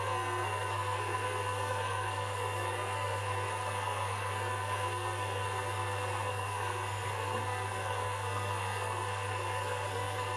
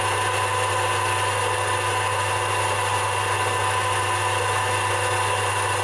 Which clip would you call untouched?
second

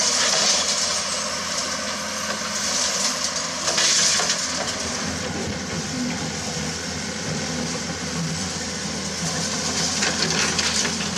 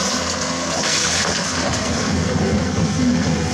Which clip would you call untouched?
first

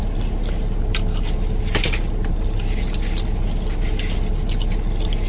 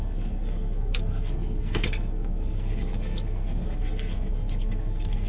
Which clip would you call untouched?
first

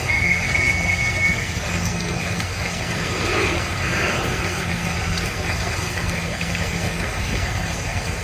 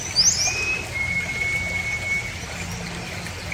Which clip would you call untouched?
second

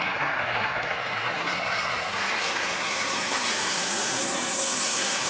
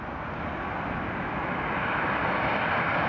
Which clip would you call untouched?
second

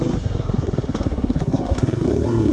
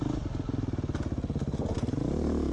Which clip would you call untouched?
second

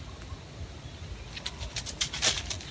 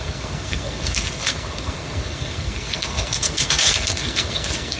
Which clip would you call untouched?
first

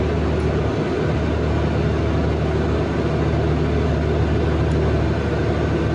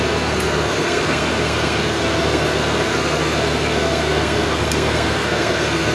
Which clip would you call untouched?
first